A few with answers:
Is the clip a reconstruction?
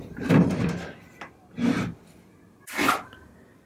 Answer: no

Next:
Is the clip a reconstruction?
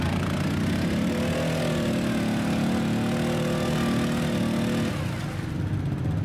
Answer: no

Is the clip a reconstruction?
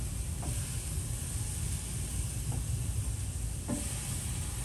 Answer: no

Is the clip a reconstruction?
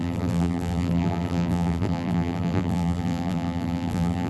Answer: yes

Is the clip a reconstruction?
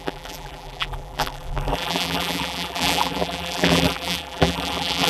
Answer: yes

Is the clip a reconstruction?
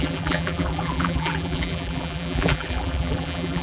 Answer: yes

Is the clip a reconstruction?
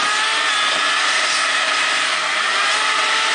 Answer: no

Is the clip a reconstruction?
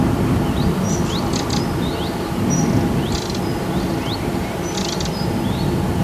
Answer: no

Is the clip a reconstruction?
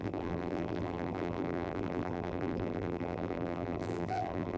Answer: yes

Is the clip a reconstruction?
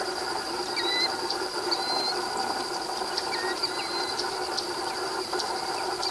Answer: yes